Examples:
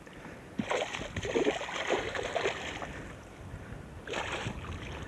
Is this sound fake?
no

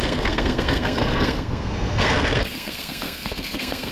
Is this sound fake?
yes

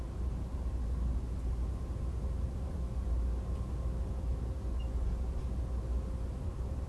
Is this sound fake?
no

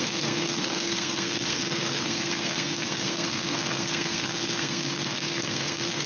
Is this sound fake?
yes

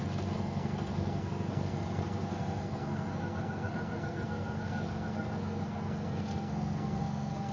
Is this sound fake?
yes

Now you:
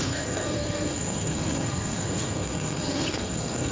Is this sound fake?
yes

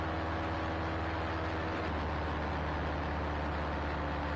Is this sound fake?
no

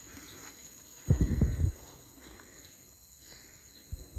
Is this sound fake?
yes